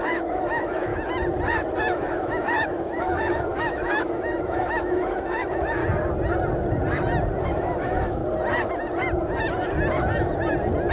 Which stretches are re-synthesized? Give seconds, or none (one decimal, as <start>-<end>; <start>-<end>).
0.0-0.9; 1.7-5.8; 7.4-8.2